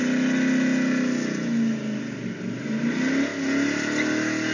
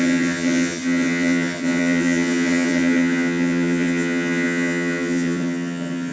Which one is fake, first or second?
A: second